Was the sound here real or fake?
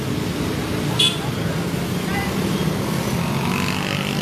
real